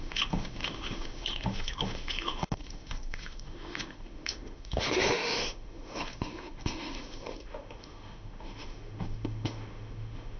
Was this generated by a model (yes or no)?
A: yes